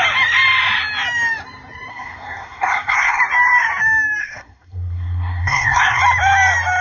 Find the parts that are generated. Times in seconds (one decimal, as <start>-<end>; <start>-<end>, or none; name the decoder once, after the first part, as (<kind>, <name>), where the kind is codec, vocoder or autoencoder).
1.9-3.2 (codec, SNAC); 4.2-6.0

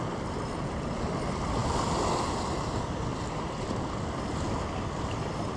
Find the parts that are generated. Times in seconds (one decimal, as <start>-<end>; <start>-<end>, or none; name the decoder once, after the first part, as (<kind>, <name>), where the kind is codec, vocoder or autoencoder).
none